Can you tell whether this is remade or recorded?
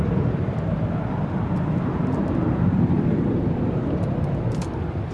remade